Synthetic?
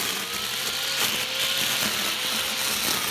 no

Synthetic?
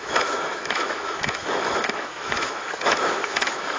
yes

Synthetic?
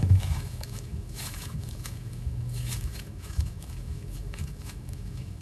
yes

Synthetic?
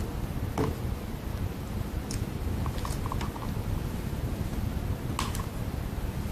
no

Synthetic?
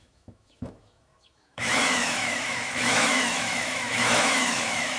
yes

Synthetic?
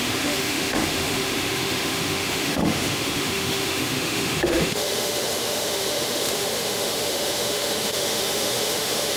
yes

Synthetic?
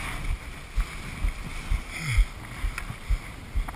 no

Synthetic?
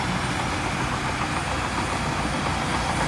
no